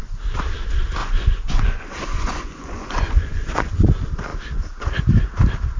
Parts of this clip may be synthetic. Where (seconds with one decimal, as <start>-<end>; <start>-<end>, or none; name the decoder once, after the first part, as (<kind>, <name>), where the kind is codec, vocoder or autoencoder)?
1.0-3.9 (vocoder, Vocos)